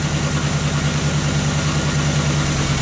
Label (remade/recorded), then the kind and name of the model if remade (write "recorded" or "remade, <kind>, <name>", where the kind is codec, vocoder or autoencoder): recorded